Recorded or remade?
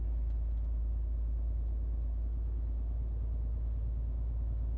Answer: recorded